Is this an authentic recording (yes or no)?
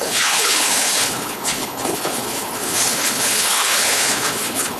no